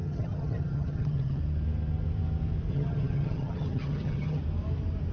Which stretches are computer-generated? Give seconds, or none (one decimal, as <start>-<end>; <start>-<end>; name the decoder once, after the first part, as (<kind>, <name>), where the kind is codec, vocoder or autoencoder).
0.0-1.4 (vocoder, HiFi-GAN); 2.7-4.4

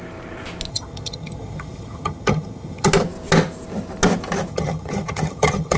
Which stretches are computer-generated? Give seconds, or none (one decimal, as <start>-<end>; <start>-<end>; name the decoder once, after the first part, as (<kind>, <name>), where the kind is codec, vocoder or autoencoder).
0.7-2.9 (vocoder, HiFi-GAN); 4.5-5.8

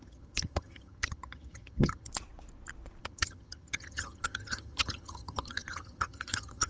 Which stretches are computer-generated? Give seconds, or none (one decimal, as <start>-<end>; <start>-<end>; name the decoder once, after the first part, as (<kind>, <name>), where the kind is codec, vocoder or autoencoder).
0.0-2.1 (vocoder, HiFi-GAN); 3.0-6.7

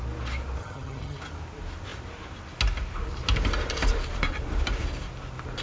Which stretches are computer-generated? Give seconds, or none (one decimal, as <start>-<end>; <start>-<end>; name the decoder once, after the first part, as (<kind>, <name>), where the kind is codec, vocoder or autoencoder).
0.6-1.2 (vocoder, HiFi-GAN)

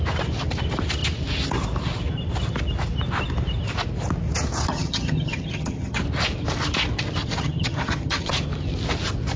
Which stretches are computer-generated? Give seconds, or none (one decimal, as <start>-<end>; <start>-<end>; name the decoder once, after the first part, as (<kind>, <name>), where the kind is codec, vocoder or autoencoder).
4.7-6.0 (vocoder, HiFi-GAN); 7.2-8.3

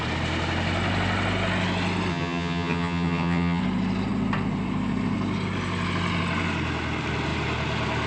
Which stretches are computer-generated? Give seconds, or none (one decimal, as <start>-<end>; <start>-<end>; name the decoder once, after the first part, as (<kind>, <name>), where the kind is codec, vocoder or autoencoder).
2.1-3.6 (vocoder, HiFi-GAN)